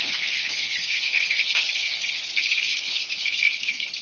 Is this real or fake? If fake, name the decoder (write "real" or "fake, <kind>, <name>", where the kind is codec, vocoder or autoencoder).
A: fake, codec, HILCodec